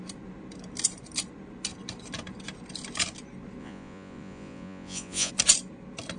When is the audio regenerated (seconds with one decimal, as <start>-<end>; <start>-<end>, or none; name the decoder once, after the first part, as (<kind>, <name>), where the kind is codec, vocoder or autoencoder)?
3.6-5.3 (vocoder, Vocos)